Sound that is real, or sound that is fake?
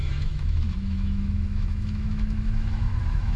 fake